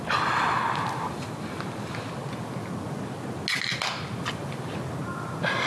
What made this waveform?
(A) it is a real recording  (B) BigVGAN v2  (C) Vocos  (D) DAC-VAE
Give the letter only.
A